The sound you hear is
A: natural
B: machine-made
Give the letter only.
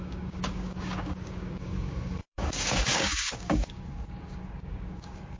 B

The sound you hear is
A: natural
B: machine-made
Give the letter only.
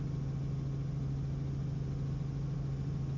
A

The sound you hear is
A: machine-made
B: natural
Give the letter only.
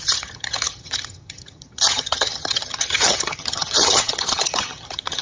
A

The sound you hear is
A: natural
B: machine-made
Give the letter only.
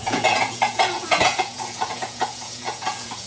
B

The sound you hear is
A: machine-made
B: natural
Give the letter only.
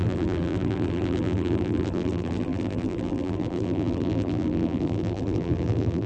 A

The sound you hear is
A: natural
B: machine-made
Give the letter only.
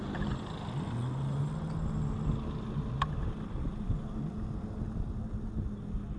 A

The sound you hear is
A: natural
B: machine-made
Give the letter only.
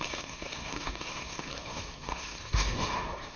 B